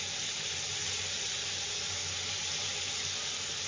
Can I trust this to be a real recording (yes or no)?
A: yes